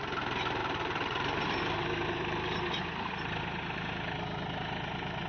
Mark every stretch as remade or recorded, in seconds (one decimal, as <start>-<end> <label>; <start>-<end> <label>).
0.0-0.6 recorded; 0.6-3.8 remade; 3.8-5.3 recorded